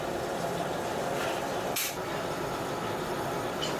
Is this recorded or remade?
remade